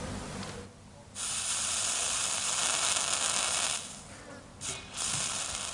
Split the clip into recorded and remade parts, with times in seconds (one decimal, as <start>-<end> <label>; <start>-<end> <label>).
0.0-5.7 recorded